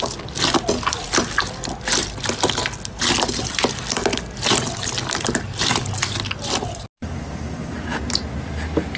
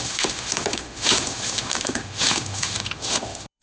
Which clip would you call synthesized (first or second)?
second